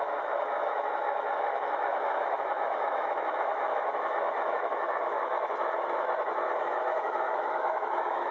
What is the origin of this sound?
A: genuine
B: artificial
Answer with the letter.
B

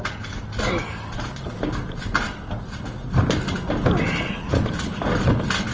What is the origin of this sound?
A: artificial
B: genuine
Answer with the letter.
B